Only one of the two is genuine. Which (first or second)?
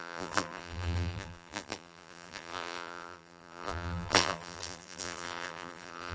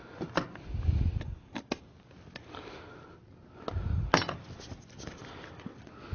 second